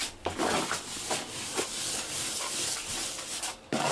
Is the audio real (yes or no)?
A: yes